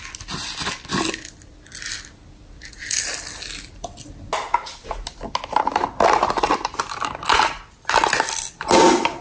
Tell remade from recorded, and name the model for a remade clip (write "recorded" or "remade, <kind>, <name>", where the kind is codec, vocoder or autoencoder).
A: recorded